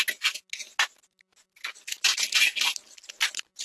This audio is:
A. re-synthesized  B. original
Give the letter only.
B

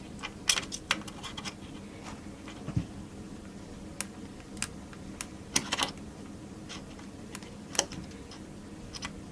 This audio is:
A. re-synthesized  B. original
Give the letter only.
B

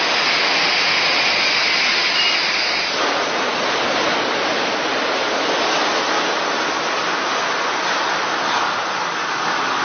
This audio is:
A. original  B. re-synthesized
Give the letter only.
A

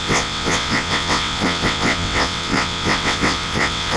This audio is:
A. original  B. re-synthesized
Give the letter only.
B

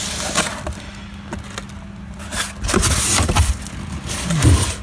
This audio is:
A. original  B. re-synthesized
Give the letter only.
A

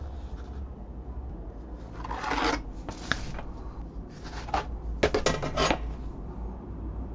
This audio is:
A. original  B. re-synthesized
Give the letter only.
A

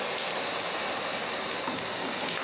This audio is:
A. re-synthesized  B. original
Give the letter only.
B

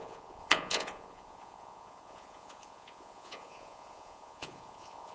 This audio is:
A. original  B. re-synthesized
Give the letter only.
B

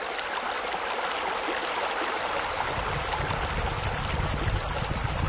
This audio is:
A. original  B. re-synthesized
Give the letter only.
A